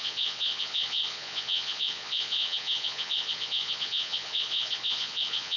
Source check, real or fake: fake